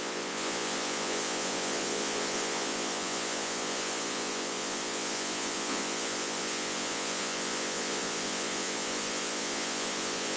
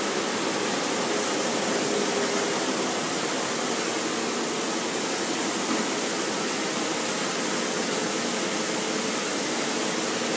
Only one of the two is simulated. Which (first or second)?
first